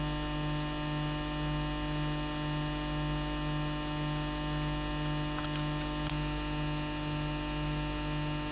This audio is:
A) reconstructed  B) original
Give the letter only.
B